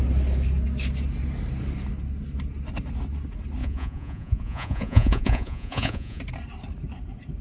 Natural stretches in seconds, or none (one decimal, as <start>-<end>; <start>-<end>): 0.0-3.6; 6.2-7.4